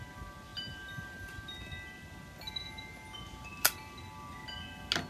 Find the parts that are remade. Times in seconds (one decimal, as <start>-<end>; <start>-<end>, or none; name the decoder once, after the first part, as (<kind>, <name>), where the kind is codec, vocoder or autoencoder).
none